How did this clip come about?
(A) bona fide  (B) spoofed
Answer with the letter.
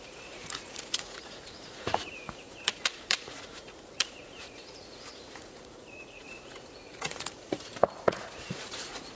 B